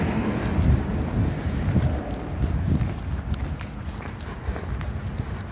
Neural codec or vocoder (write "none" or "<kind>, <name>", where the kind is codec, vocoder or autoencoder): none